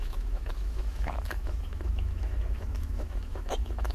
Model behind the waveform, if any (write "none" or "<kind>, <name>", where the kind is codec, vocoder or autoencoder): autoencoder, DAC-VAE